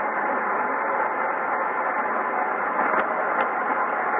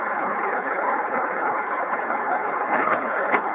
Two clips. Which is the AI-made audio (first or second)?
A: second